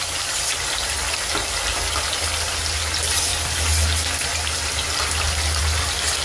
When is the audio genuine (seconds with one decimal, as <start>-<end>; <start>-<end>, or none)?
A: 0.0-6.2